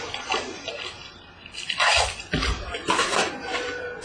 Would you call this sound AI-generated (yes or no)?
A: yes